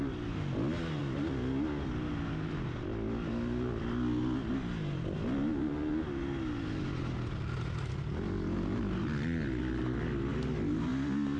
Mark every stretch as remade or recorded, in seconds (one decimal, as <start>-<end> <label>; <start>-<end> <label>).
0.0-11.4 recorded